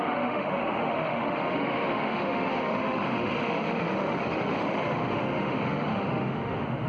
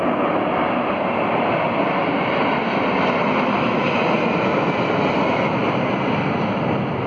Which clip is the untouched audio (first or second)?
second